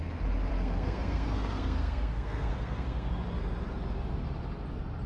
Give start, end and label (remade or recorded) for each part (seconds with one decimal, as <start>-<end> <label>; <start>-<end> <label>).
0.0-0.5 recorded; 0.5-3.1 remade; 3.1-5.1 recorded

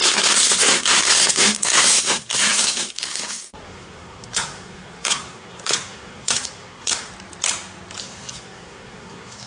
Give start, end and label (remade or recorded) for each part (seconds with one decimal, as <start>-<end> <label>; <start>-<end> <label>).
0.0-7.1 remade; 7.1-8.0 recorded; 8.0-9.5 remade

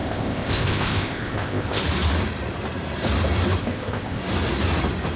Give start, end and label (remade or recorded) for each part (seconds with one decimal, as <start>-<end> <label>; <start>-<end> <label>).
0.0-1.8 remade; 1.8-3.6 recorded; 3.6-4.2 remade; 4.2-5.2 recorded

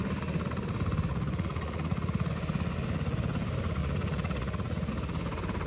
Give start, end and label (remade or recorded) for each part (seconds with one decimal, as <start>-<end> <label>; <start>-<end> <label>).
0.0-1.1 recorded; 1.1-2.3 remade; 2.3-3.8 recorded; 3.8-4.9 remade; 4.9-5.7 recorded